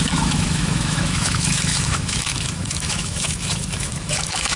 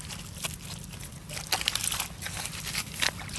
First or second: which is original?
second